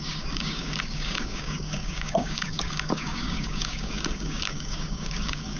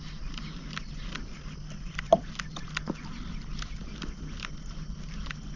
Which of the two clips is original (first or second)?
second